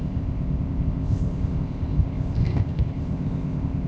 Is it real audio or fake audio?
fake